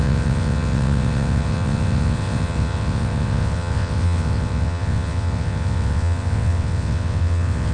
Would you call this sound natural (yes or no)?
no